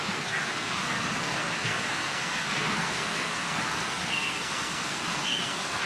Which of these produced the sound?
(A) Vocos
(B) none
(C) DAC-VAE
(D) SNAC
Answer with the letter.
D